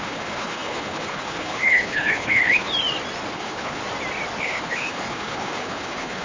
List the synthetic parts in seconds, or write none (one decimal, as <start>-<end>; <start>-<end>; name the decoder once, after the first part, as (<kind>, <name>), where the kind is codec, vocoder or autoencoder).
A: 0.0-2.7 (codec, HILCodec); 3.3-3.8; 4.4-6.2